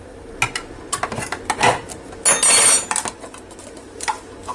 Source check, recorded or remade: recorded